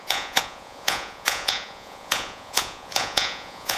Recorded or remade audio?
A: remade